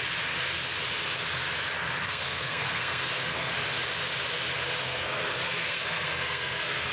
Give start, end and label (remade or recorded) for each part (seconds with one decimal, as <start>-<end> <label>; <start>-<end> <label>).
0.0-2.0 recorded; 2.0-3.5 remade; 3.5-4.8 recorded; 4.8-6.9 remade